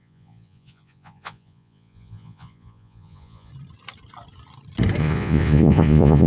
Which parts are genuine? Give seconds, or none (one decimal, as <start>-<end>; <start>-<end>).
3.5-5.0